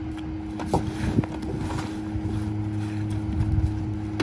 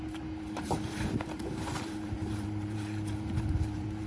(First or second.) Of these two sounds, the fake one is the second